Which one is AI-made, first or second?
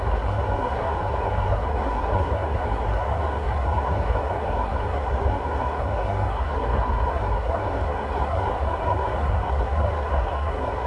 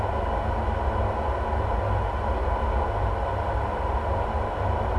first